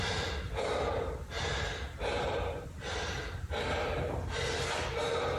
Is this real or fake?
real